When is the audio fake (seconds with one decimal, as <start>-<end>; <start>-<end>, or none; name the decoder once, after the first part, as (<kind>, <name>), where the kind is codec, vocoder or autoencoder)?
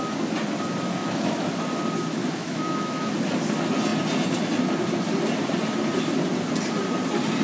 1.0-1.6 (autoencoder, DAC-VAE); 2.2-3.1